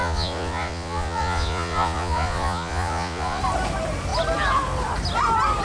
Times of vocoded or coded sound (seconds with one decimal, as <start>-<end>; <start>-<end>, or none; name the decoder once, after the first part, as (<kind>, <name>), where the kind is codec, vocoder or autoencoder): 0.0-3.4 (vocoder, Vocos)